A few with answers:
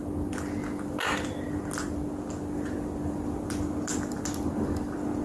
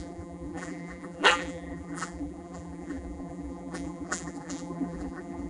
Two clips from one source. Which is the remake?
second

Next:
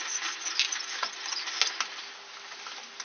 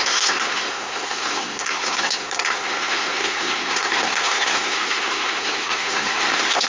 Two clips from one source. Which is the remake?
second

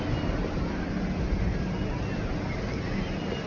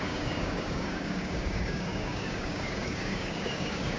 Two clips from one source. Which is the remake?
second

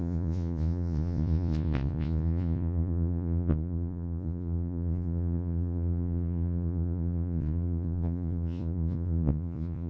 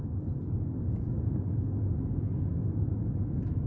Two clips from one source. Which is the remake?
first